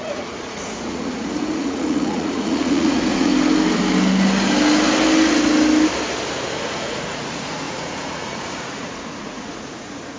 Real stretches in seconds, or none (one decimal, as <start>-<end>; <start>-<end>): 3.3-6.6